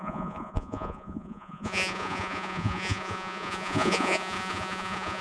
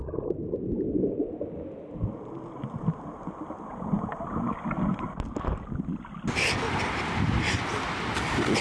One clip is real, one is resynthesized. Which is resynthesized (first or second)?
first